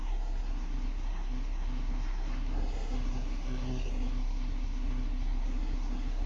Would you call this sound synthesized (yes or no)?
yes